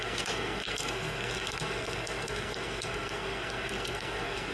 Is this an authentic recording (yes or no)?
no